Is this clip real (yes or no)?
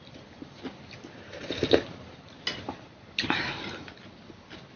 yes